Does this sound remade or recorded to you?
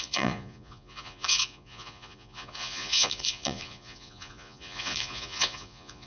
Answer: remade